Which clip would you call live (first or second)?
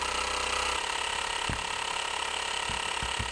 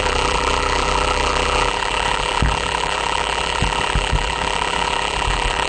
first